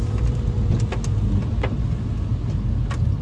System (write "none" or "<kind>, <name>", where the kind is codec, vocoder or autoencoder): none